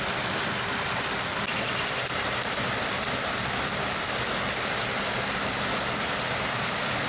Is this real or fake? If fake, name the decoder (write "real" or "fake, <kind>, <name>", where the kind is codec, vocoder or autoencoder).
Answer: real